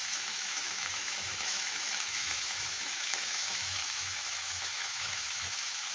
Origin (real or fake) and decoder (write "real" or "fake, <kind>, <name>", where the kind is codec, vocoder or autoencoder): fake, autoencoder, DAC-VAE